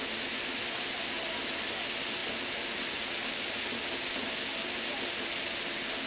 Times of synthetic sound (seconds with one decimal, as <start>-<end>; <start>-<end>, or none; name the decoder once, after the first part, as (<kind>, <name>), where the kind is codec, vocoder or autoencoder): none